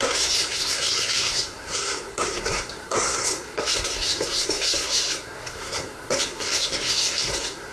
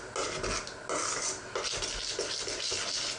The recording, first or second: second